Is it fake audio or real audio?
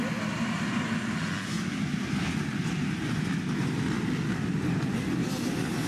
real